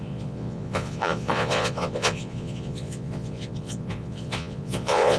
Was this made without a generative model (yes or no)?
no